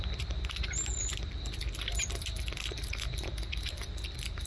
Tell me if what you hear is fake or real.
real